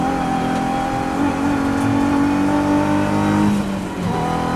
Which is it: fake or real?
real